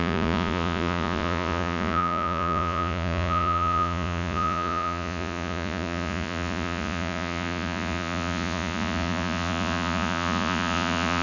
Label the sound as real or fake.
fake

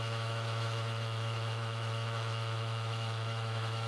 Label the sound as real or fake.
fake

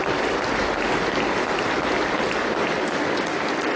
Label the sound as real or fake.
real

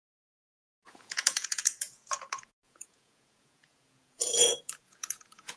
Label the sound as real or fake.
fake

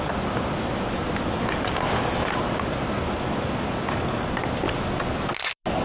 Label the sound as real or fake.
real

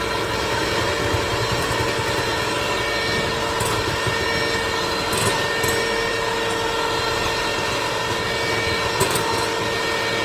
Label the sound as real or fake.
real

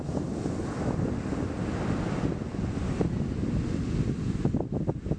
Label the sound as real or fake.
real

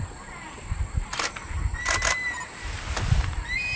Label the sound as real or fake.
real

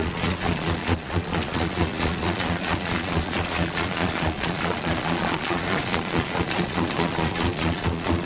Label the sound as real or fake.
fake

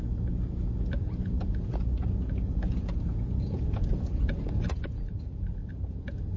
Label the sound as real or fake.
fake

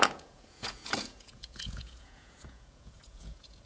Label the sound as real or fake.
fake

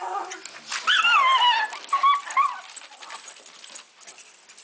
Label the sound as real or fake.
real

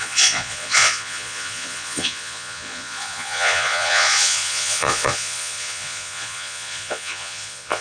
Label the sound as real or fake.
fake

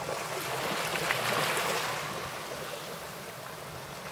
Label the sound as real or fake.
real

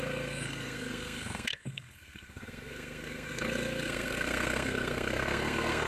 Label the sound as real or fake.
fake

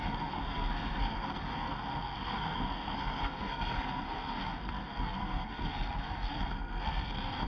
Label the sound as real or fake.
fake